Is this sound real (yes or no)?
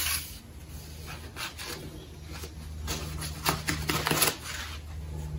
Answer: yes